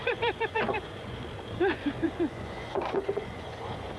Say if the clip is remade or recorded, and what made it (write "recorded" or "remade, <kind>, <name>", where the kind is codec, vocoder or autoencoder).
remade, vocoder, Vocos